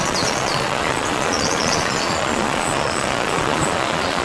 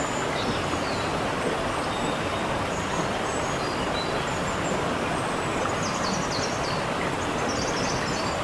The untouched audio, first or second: second